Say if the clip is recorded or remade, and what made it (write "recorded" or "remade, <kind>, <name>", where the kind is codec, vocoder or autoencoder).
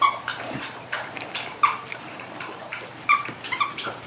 remade, vocoder, BigVGAN v2